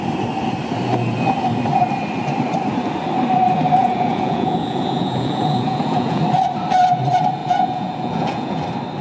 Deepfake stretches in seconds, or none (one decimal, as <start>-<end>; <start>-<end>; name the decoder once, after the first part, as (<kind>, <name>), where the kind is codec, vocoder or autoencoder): 3.8-6.2 (vocoder, Vocos); 7.4-8.6